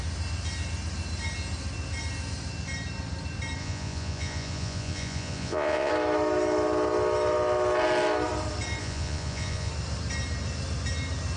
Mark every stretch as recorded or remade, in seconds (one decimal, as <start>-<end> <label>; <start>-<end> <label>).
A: 0.0-3.6 recorded; 3.6-5.9 remade; 5.9-8.8 recorded; 8.8-9.7 remade; 9.7-11.4 recorded

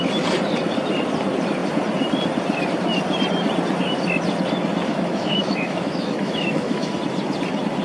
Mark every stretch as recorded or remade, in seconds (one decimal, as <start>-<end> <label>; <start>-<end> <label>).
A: 0.0-4.9 recorded; 4.9-6.9 remade; 6.9-7.8 recorded